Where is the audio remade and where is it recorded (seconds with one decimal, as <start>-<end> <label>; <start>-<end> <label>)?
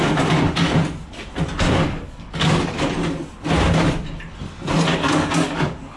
0.0-1.8 recorded; 1.8-2.8 remade; 2.8-4.9 recorded; 4.9-6.0 remade